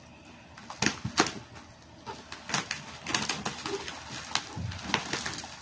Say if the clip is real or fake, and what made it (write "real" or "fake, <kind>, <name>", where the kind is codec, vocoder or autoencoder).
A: real